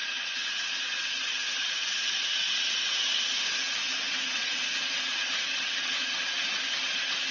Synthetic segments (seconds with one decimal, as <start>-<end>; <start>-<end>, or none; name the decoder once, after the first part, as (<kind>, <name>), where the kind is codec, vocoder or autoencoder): 0.0-3.0 (vocoder, WaveNeXt); 3.8-6.1